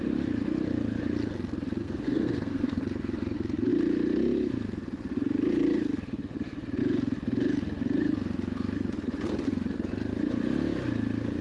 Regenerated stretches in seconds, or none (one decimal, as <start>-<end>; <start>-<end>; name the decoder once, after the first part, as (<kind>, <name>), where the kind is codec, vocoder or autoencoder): 1.8-2.8 (codec, SNAC)